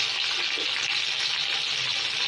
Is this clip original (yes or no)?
yes